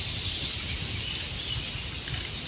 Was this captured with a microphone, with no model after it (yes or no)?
yes